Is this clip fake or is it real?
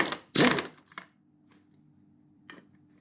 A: real